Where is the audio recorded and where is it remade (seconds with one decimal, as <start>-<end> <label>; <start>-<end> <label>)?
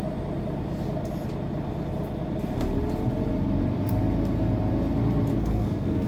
0.0-5.3 recorded; 5.3-6.1 remade